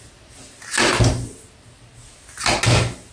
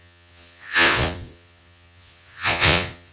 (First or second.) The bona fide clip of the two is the first